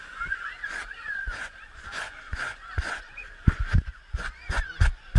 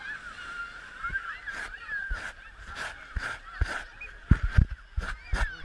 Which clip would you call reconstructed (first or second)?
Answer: first